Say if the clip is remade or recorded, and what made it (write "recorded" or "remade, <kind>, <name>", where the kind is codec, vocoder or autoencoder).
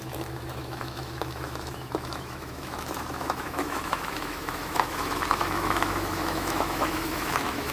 remade, autoencoder, DAC-VAE